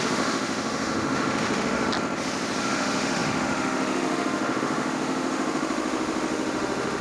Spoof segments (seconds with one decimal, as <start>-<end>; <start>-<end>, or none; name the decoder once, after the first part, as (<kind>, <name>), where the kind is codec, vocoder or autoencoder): 0.0-1.9 (autoencoder, DAC-VAE); 2.6-7.0

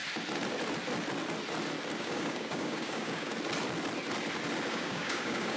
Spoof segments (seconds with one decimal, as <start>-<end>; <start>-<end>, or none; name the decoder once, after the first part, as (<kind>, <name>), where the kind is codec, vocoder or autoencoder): 2.0-3.3 (codec, DAC); 4.7-5.6

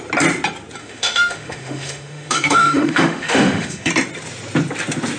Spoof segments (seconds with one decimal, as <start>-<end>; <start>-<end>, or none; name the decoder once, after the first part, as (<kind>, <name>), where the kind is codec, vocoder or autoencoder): 0.8-3.9 (autoencoder, DAC-VAE)

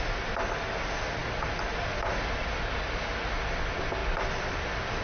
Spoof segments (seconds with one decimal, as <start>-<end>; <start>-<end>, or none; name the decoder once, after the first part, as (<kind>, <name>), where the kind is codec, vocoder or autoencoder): none

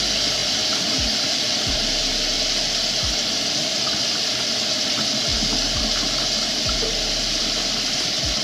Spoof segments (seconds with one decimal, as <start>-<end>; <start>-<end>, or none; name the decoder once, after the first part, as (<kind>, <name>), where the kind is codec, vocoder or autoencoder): none